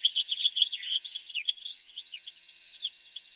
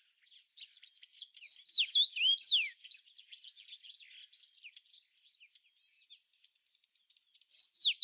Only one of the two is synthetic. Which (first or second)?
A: first